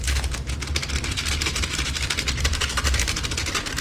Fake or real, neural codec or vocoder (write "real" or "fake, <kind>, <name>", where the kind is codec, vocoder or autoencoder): fake, vocoder, BigVGAN v2